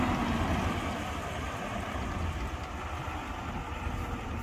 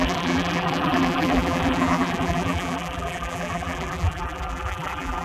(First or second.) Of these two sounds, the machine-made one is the second